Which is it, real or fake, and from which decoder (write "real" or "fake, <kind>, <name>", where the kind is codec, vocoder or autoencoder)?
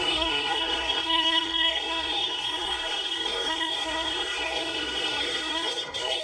fake, codec, SNAC